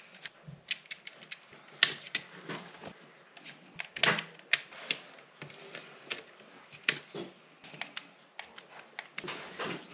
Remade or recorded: recorded